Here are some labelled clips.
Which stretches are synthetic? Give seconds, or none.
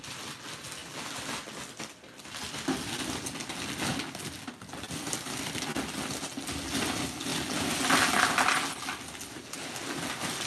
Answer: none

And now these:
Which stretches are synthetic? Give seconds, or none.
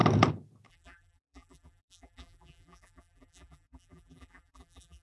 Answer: 0.7-5.0 (vocoder, BigVGAN v2)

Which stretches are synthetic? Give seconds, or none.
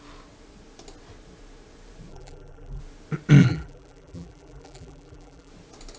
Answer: 2.1-2.8 (vocoder, BigVGAN v2); 3.4-5.5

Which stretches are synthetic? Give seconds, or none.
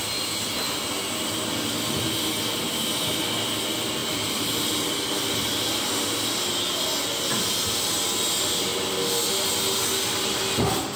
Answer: 4.0-4.8 (vocoder, BigVGAN v2)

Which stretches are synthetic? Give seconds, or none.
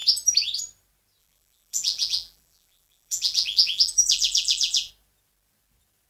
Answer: 1.2-4.9 (vocoder, BigVGAN v2)